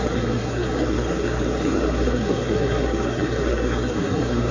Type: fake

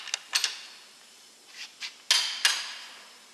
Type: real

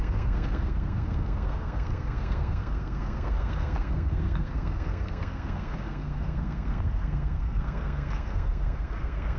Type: fake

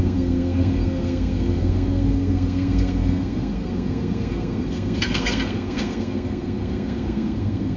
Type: fake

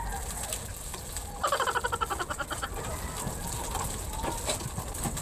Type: real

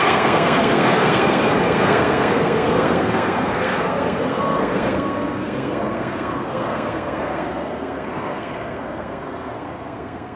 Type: fake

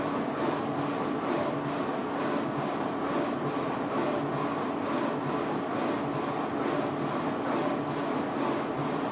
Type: real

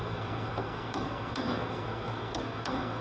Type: fake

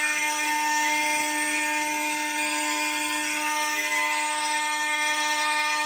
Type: fake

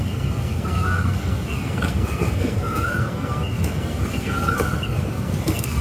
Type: fake